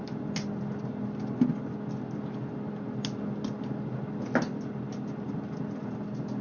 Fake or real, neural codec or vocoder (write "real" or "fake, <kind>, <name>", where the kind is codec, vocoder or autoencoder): real